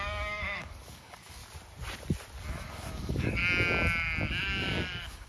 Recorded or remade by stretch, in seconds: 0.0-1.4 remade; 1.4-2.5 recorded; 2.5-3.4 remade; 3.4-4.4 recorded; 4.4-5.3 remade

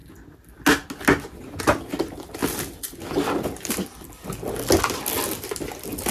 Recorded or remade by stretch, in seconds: 0.0-6.1 recorded

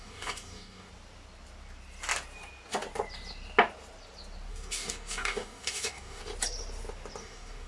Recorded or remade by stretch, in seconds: 0.0-0.9 remade; 0.9-4.5 recorded; 4.5-6.2 remade; 6.2-7.2 recorded; 7.2-7.7 remade

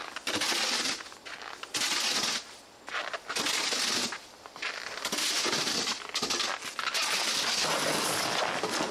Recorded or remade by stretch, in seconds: 0.0-8.9 recorded